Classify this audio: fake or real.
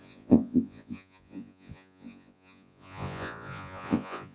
fake